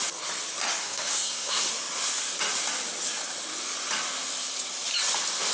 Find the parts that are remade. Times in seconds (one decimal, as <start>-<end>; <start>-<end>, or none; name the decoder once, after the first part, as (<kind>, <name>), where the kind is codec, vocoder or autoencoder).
0.8-1.7 (codec, SNAC)